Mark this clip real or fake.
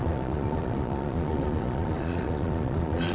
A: fake